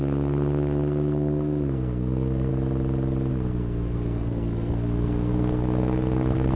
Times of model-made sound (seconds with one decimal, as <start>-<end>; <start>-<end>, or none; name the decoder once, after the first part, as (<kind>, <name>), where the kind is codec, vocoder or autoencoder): 0.0-2.5 (codec, SNAC); 3.3-6.6